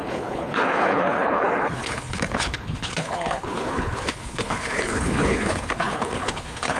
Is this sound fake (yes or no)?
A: yes